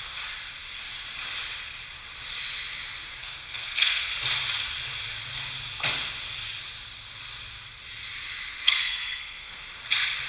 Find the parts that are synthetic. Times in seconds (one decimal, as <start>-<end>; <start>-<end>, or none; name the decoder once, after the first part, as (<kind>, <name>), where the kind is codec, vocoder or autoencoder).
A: 3.2-4.1 (codec, SNAC); 8.5-9.6